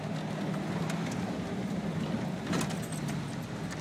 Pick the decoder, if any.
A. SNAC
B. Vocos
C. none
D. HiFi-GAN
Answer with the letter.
C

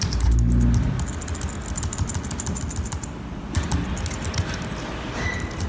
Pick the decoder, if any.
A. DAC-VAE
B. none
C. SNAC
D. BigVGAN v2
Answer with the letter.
B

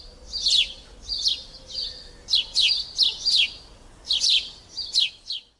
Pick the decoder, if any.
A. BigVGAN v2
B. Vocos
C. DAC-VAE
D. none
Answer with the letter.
D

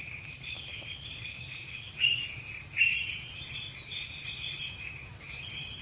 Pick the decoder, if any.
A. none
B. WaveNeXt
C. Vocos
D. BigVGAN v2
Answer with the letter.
D